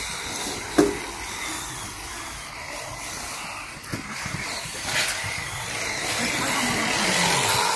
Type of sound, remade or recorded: recorded